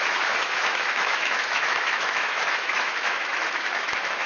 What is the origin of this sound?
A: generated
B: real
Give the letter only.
A